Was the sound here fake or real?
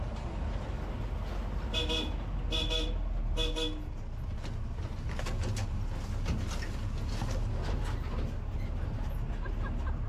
real